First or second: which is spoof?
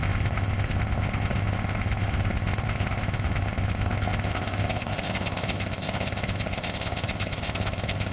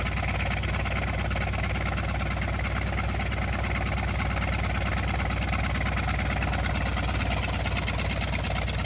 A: first